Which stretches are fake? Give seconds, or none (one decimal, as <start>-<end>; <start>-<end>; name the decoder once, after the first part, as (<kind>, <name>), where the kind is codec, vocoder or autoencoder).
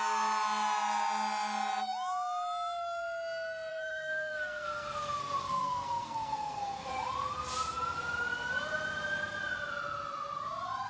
3.7-6.9 (codec, SNAC)